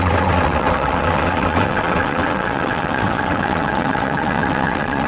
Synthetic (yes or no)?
yes